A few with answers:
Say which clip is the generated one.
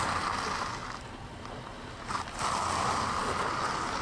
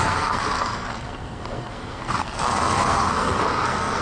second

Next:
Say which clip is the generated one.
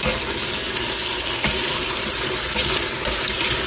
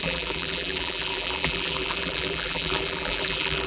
second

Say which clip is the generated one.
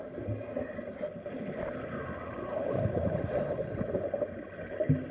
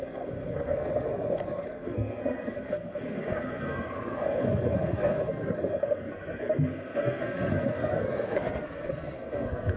second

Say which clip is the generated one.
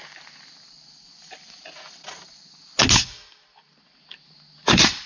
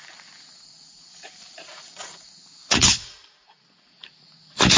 second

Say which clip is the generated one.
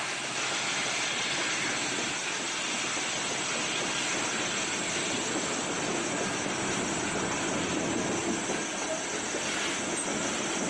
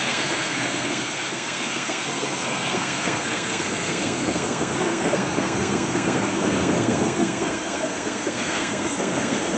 second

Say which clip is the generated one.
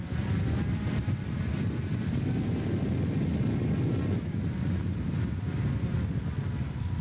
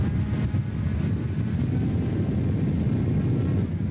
first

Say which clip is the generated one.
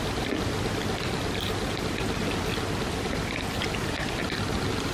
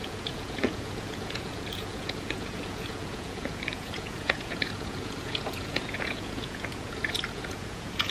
second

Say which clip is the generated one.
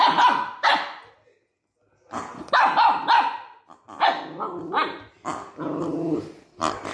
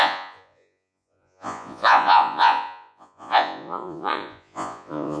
second